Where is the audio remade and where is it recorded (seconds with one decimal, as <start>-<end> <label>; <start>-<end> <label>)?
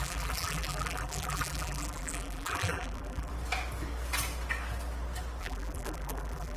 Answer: 0.0-3.3 remade; 3.3-5.4 recorded; 5.4-6.6 remade